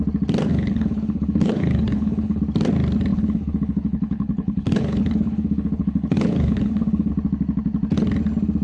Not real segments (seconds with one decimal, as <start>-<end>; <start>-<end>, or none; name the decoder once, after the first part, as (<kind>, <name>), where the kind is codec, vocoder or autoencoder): 0.5-2.4 (codec, HILCodec); 3.1-7.1